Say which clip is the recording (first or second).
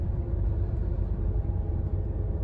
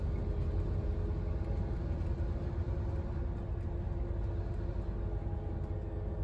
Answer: second